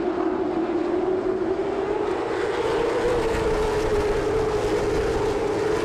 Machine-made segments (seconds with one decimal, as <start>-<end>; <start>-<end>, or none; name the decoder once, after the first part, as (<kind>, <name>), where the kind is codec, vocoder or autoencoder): none